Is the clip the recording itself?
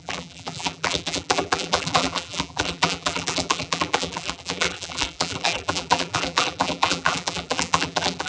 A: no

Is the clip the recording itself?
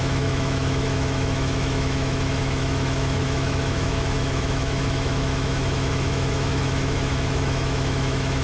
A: no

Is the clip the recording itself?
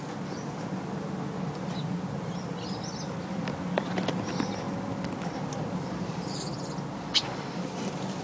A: yes